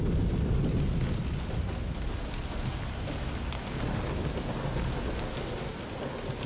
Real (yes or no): yes